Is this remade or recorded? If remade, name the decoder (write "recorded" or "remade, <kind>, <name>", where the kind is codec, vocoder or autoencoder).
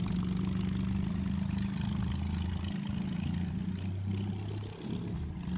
recorded